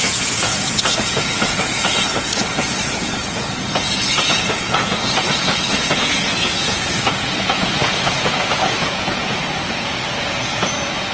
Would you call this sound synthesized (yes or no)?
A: yes